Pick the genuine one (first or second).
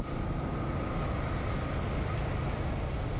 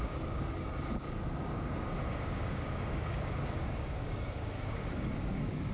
first